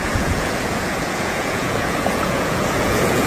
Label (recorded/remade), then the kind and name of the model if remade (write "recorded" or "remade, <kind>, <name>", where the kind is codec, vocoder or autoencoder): remade, vocoder, Vocos